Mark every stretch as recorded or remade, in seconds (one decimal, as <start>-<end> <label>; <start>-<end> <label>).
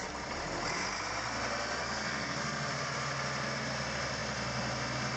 0.0-1.8 recorded; 1.8-2.7 remade; 2.7-5.2 recorded